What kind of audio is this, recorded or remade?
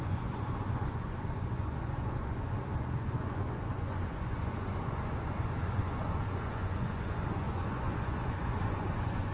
remade